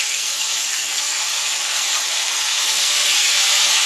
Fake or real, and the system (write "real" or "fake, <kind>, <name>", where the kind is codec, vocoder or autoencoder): fake, codec, SNAC